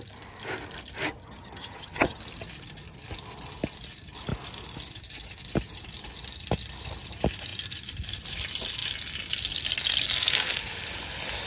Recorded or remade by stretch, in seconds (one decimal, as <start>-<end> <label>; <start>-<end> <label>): 0.0-1.2 recorded; 1.2-2.2 remade; 2.2-11.5 recorded